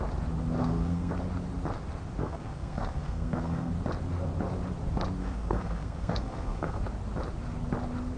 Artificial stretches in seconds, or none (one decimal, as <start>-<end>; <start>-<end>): 0.6-1.1; 2.2-3.7; 5.2-6.8